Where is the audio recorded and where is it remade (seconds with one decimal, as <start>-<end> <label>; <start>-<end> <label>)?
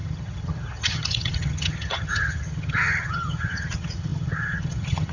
0.0-5.1 remade